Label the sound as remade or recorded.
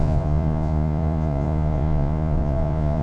remade